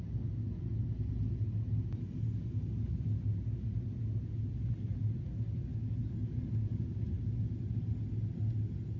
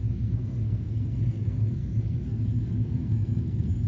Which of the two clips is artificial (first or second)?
second